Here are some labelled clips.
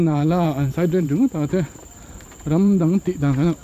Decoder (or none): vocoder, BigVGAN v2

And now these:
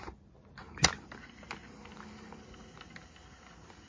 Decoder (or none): none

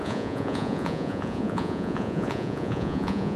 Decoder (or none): vocoder, Vocos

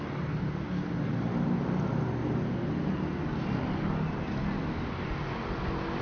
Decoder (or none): none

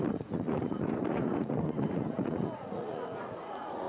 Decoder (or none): vocoder, Vocos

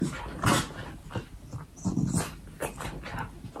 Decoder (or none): none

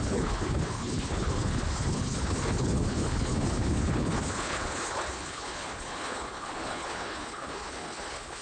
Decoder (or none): codec, HILCodec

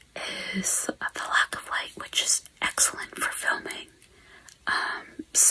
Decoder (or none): none